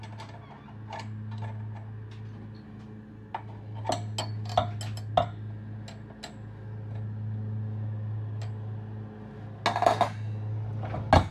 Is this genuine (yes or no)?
yes